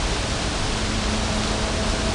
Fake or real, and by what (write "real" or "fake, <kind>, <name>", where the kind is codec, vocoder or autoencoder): real